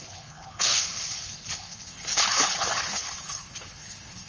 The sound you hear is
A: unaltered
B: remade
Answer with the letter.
B